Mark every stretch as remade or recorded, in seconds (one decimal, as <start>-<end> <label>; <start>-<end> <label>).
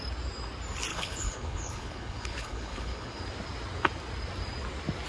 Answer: 0.0-0.9 recorded; 0.9-3.2 remade; 3.2-5.1 recorded